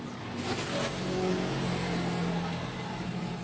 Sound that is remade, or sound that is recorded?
recorded